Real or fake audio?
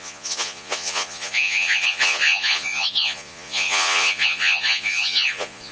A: fake